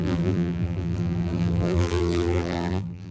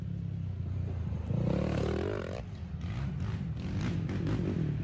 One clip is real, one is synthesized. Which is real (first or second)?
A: second